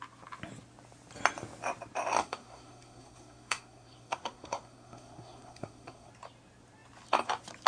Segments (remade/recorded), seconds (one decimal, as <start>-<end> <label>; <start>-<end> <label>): 0.0-2.2 recorded; 2.2-6.1 remade; 6.1-7.7 recorded